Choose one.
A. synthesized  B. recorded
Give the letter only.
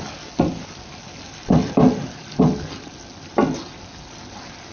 B